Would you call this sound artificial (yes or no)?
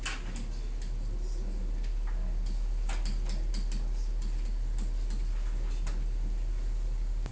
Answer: no